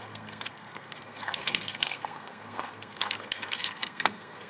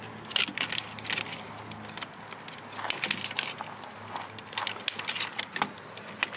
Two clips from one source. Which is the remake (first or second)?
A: first